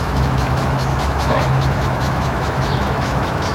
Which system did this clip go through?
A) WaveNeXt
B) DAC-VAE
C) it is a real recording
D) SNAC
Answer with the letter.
B